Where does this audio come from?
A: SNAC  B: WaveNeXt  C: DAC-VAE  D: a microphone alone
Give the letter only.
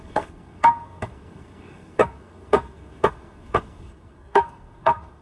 A